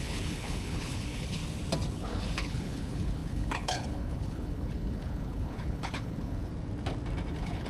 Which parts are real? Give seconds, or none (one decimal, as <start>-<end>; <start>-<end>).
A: 1.4-1.9; 6.5-7.3